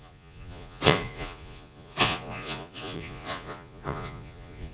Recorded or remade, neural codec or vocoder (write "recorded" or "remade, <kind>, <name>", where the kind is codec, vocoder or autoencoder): remade, vocoder, Vocos